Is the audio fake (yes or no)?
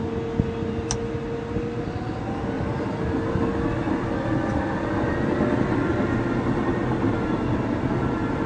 no